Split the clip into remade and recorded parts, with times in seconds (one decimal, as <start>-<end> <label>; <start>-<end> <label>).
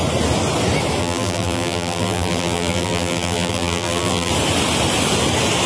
0.0-1.0 recorded; 1.0-4.3 remade; 4.3-5.7 recorded